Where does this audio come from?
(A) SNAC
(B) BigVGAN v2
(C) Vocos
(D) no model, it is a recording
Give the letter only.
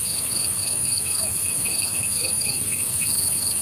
A